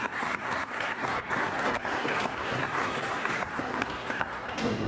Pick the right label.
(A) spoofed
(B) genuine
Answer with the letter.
A